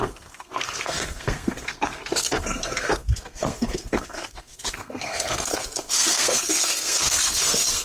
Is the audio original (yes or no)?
no